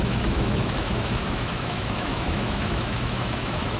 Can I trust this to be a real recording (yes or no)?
no